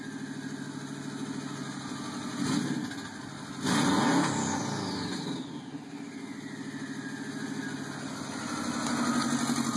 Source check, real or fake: real